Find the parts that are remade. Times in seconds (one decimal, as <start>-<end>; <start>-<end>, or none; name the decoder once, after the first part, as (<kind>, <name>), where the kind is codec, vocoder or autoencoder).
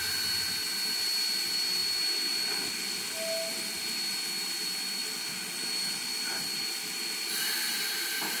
none